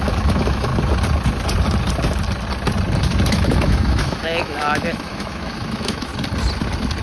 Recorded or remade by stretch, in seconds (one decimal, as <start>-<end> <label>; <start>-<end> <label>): 0.0-0.7 remade; 0.7-3.3 recorded; 3.3-6.1 remade; 6.1-7.0 recorded